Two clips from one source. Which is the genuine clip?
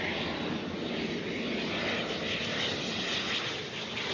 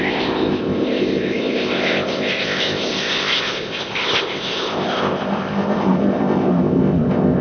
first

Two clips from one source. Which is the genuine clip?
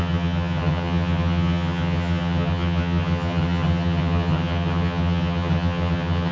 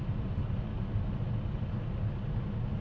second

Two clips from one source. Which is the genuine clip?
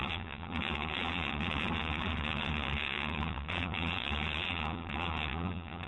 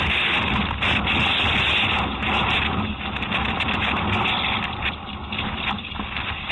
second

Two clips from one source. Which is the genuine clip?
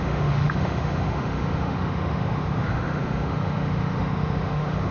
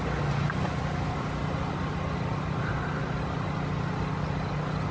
second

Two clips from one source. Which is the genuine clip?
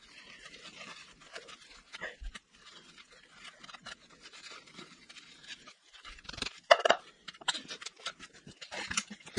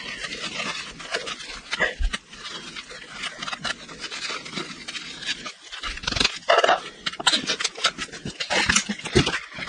second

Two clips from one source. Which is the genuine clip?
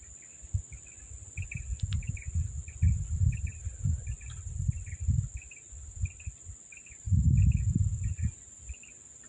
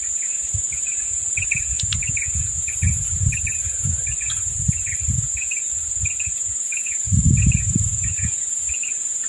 first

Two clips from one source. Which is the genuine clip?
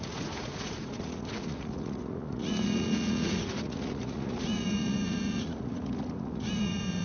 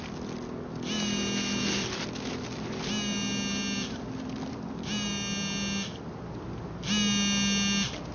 second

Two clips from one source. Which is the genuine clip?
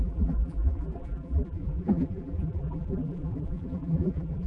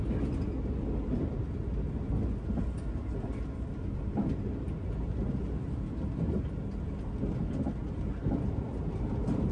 second